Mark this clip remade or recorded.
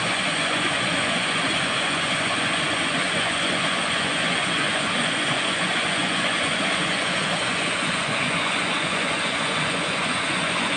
remade